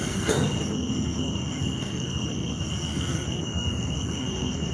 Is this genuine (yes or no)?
no